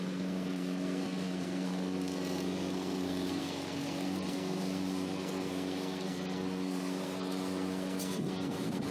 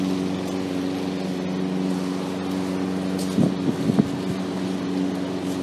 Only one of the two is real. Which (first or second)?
second